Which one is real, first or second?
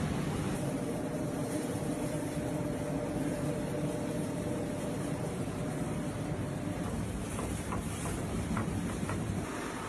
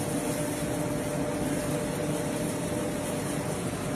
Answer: second